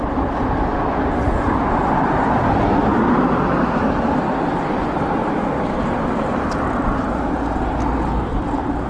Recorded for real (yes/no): yes